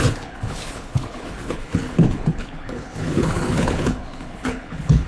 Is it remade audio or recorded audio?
remade